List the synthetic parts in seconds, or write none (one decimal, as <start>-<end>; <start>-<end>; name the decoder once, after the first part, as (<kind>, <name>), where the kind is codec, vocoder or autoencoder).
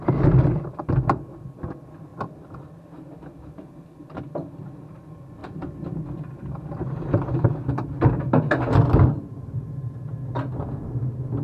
none